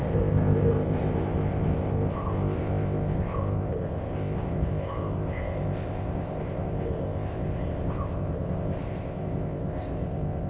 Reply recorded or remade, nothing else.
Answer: remade